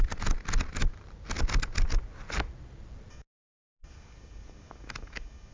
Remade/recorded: recorded